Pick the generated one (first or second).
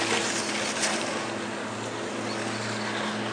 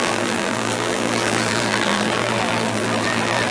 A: second